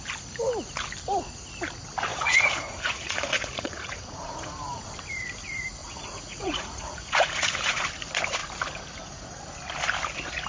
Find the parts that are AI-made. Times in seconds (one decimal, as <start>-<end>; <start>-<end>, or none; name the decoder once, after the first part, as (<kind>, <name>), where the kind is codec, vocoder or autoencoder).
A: 2.1-4.8 (vocoder, Vocos); 5.8-7.8